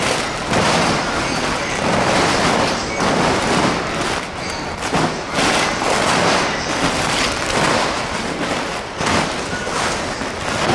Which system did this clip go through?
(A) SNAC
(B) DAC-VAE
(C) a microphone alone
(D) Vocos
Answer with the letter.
C